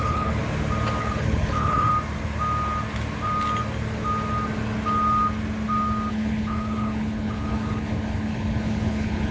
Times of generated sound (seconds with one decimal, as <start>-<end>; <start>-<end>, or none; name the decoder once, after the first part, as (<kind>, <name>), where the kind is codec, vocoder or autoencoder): 0.0-0.4 (codec, HILCodec); 1.0-1.9; 6.1-9.3